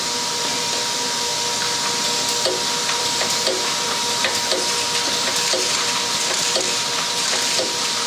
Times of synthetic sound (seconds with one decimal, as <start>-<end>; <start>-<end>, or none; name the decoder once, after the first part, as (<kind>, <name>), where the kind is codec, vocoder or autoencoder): 0.0-1.3 (vocoder, BigVGAN v2); 2.8-4.0; 5.2-8.1